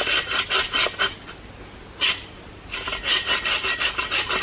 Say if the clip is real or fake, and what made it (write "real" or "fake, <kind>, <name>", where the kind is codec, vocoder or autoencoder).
real